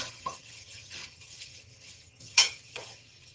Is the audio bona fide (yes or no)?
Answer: no